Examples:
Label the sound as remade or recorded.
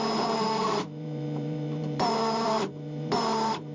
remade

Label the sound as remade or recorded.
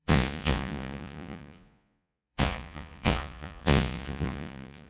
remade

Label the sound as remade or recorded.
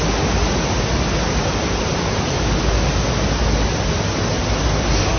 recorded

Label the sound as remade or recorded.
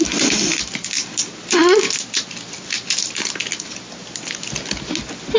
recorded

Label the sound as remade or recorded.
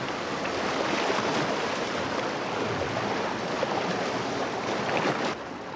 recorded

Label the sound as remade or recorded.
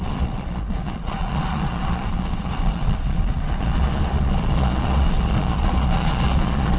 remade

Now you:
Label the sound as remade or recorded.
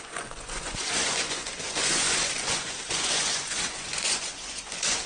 remade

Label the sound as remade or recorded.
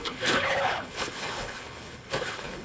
remade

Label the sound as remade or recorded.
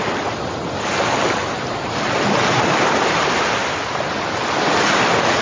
recorded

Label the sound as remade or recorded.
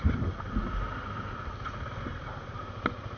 recorded